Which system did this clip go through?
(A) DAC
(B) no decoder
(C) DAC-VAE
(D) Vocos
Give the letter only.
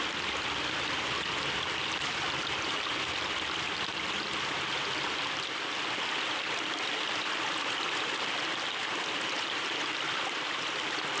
B